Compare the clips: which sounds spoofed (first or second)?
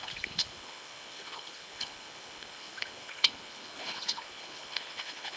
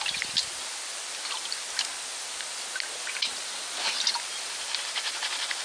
first